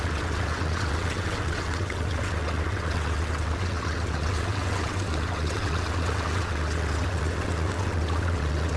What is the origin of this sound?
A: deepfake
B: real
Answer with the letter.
A